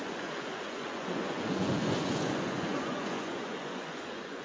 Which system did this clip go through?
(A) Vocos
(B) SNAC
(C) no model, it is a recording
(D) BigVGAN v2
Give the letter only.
A